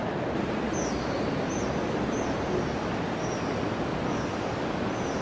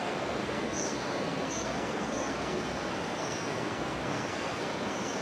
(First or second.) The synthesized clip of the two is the second